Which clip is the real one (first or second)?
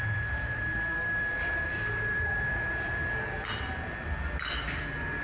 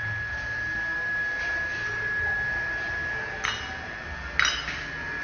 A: second